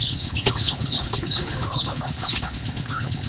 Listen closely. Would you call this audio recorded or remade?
remade